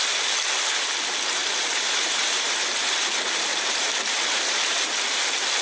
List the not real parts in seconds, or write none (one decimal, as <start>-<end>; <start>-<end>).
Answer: 1.4-4.8

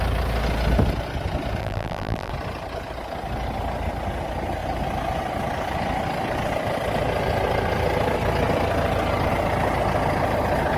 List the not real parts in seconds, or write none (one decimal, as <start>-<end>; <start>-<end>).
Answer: 1.6-2.3

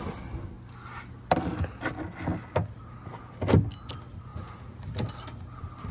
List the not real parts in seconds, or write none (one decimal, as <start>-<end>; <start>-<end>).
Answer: 2.8-3.3; 4.3-5.1